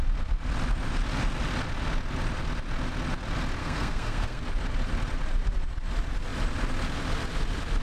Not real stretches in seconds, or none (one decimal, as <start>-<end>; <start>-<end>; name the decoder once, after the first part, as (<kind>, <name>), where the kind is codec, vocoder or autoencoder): 3.6-4.4 (codec, SNAC)